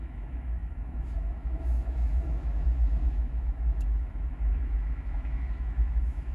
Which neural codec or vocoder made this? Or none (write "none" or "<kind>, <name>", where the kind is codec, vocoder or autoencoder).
autoencoder, DAC-VAE